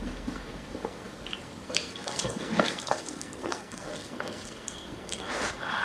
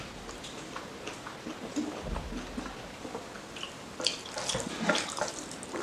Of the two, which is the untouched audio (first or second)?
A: second